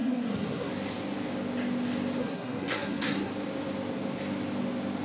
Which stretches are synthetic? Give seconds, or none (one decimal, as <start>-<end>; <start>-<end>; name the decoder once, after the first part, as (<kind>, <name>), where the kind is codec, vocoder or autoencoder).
0.0-0.7 (codec, SNAC); 2.2-3.3